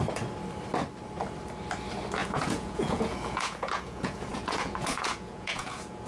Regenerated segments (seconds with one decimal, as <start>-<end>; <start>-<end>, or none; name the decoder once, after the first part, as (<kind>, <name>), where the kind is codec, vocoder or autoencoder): 2.2-6.1 (vocoder, Vocos)